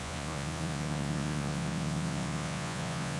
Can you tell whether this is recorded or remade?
remade